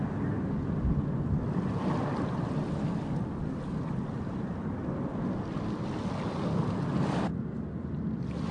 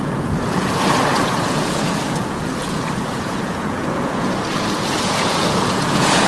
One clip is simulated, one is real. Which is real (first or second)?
first